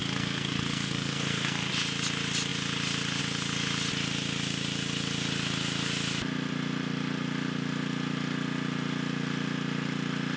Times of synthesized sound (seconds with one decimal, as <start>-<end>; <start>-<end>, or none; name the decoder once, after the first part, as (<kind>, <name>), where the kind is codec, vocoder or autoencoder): 0.0-1.7 (codec, SNAC)